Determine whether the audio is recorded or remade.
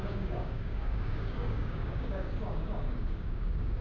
remade